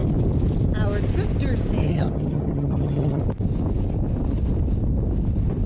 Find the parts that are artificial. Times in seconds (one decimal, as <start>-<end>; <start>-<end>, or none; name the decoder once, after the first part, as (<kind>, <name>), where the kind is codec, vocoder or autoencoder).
1.8-3.2 (vocoder, HiFi-GAN)